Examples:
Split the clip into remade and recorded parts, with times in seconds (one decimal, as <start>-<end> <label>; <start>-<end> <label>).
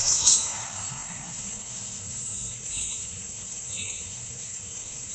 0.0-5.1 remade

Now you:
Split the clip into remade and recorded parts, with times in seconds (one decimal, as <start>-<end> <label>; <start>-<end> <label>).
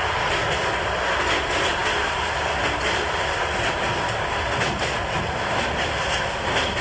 0.0-6.8 recorded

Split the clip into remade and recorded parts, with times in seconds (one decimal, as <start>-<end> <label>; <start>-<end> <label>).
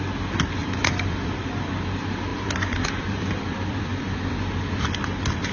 0.0-0.6 recorded; 0.6-1.7 remade; 1.7-2.3 recorded; 2.3-3.8 remade; 3.8-5.5 recorded